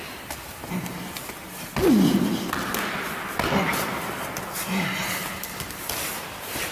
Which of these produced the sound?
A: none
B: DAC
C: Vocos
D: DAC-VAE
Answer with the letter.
A